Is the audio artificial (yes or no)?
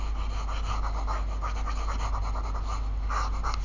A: no